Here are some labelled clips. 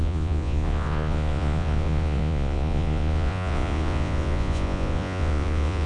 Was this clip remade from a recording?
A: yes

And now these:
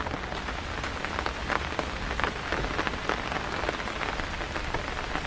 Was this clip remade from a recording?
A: no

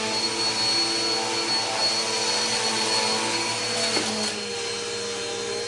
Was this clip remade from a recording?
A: no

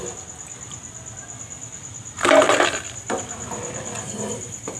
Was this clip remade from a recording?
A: no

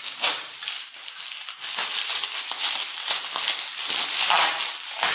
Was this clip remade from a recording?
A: no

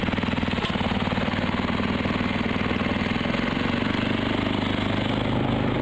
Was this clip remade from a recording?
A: no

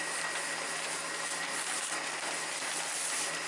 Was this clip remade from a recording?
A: no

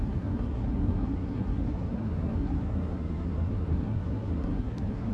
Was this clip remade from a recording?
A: yes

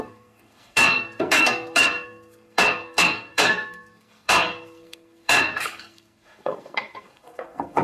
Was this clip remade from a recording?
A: yes